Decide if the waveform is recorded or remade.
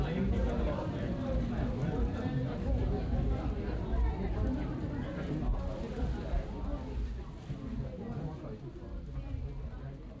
recorded